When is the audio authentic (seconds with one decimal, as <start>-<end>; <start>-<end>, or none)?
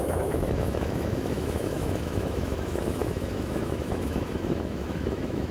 none